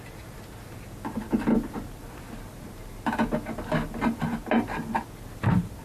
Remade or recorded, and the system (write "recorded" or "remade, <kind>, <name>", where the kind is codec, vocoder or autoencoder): recorded